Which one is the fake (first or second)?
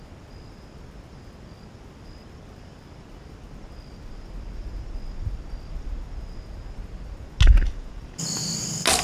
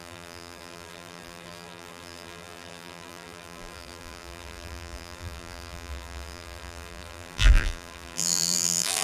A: second